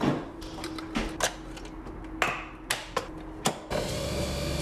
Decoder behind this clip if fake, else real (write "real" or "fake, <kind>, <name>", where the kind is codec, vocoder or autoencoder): real